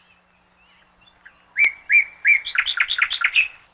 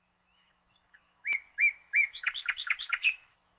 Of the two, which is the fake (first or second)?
second